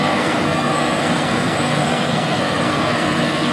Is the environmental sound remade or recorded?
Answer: remade